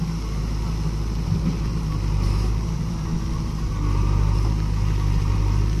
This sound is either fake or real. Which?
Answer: real